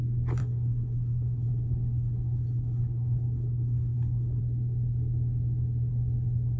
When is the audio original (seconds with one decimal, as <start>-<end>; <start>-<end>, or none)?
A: 0.0-0.4; 4.4-6.6

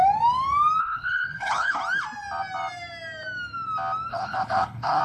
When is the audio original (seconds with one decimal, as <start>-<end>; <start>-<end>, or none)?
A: 0.0-0.8; 1.8-4.1

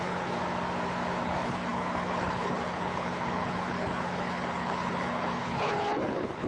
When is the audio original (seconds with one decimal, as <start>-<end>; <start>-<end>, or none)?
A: 0.4-1.2

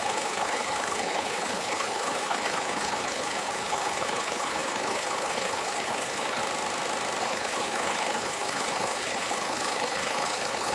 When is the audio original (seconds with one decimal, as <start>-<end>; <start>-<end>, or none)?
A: 6.4-7.2

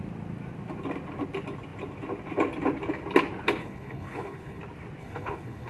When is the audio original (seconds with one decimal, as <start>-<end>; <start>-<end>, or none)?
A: 0.0-3.6; 4.6-5.0

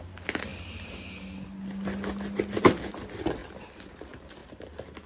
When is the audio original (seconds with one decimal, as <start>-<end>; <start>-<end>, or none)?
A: 0.0-5.1